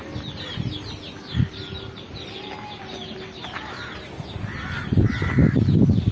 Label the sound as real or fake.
real